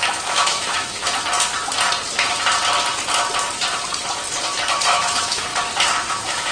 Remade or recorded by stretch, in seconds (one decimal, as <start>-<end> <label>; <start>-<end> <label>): 0.0-1.0 remade; 1.0-4.9 recorded; 4.9-5.5 remade; 5.5-6.1 recorded; 6.1-6.5 remade